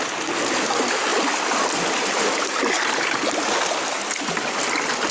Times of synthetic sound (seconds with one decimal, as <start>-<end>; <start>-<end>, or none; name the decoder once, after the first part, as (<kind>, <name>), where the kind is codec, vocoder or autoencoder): none